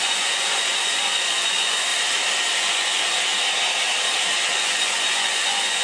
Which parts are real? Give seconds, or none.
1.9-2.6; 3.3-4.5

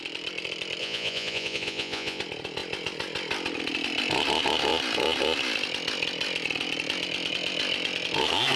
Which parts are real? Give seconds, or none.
0.0-0.8; 2.2-8.6

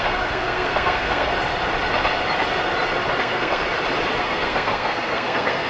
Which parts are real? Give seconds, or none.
1.3-3.2; 3.6-4.2

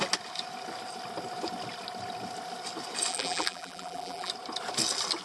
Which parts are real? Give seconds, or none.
0.0-3.1; 4.3-5.2

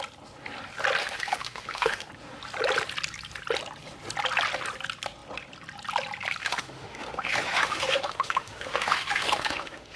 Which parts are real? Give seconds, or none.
0.0-1.0; 2.1-6.4

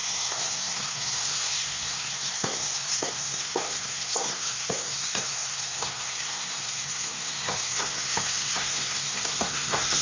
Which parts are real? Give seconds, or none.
none

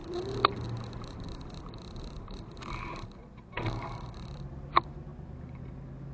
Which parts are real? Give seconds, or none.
0.0-6.1